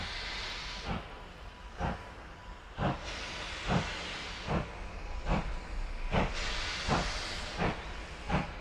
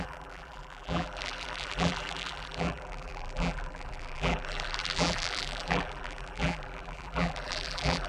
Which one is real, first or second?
first